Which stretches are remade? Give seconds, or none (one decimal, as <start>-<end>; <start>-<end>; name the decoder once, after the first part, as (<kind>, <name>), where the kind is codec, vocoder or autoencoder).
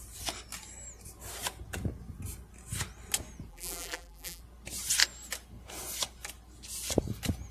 3.5-4.4 (vocoder, BigVGAN v2)